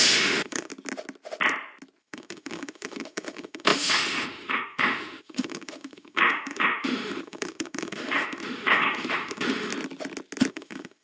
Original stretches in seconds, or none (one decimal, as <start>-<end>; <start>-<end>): 0.7-2.0; 9.7-10.5